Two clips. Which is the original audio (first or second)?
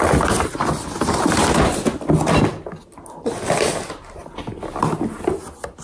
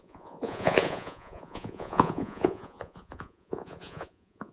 first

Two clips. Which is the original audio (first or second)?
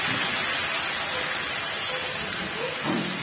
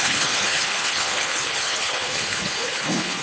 first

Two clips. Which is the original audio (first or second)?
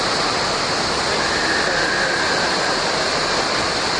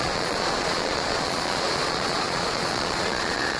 first